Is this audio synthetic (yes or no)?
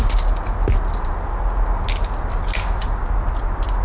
no